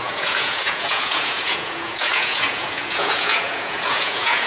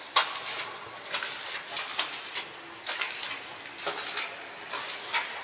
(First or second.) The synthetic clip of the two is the first